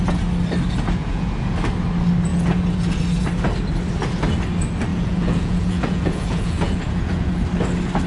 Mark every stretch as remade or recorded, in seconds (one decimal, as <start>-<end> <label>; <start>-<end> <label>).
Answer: 0.0-1.0 recorded; 1.0-1.5 remade; 1.5-2.3 recorded; 2.3-3.0 remade; 3.0-4.9 recorded; 4.9-7.3 remade; 7.3-8.1 recorded